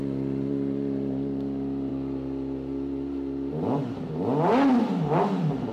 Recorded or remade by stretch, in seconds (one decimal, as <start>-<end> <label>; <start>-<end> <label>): 0.0-5.7 recorded